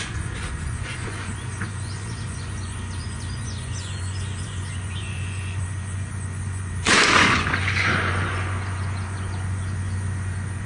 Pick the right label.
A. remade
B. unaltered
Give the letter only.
A